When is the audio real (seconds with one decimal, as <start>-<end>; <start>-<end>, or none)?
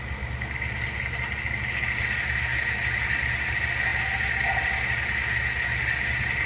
0.0-6.5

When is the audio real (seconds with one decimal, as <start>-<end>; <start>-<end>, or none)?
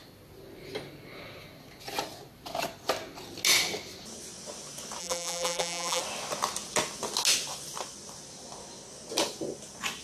0.0-5.0; 6.0-10.0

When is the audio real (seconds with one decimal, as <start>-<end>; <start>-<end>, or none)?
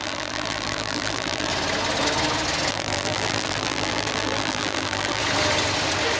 1.5-2.7; 5.2-6.2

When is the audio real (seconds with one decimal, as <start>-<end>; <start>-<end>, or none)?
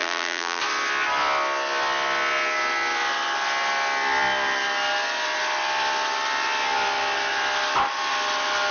0.6-8.7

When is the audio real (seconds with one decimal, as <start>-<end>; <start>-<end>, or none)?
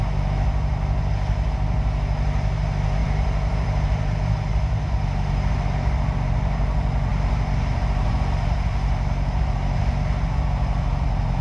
0.0-3.0; 4.0-4.5; 5.5-7.1; 8.1-11.4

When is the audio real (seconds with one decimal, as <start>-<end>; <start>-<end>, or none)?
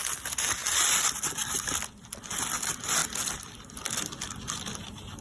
0.0-5.2